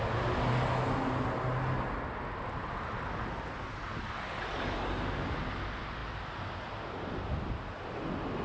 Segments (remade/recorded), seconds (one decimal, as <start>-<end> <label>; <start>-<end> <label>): 0.0-8.4 recorded